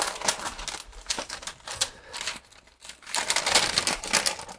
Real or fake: real